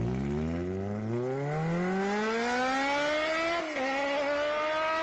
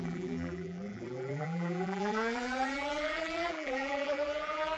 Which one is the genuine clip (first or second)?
first